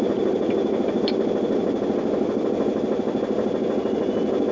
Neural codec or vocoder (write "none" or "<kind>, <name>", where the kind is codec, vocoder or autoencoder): none